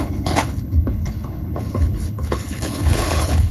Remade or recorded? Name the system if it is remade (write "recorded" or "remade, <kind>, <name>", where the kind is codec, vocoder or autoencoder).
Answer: remade, codec, HILCodec